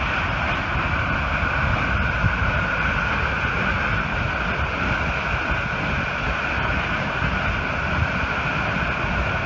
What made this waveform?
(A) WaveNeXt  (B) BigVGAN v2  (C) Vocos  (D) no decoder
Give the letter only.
D